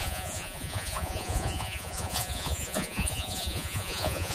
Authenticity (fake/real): fake